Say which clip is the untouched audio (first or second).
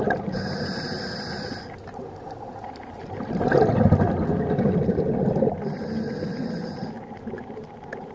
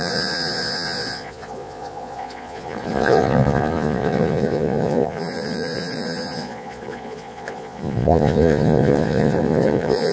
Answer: first